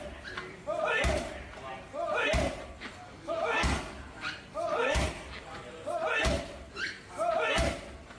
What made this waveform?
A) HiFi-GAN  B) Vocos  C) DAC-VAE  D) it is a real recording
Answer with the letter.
D